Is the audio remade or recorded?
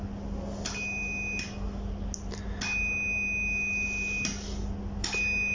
recorded